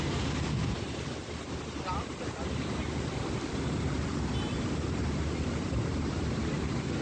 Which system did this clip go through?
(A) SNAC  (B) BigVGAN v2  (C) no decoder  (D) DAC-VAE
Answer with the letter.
C